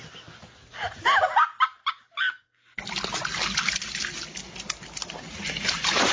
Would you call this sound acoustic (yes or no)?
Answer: yes